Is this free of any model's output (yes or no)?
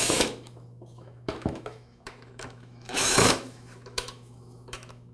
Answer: no